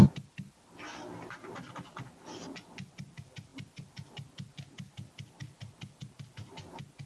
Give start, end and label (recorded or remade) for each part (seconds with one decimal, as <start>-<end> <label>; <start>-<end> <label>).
0.0-7.1 recorded